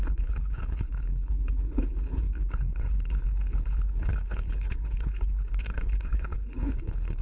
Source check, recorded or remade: remade